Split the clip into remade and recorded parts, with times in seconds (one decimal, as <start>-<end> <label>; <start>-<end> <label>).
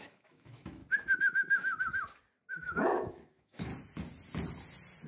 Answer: 0.0-0.8 remade; 0.8-2.5 recorded; 2.5-3.7 remade; 3.7-5.1 recorded